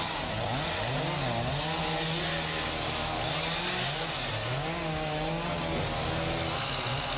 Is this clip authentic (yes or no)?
yes